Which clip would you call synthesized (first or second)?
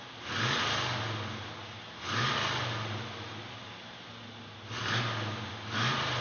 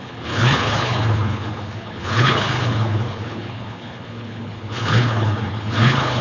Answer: second